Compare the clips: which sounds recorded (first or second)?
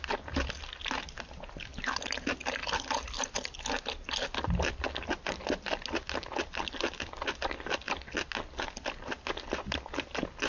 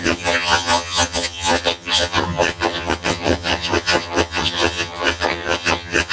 first